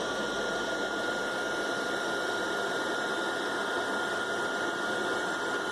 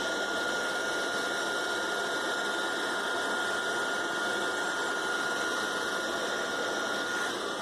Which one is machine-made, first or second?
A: first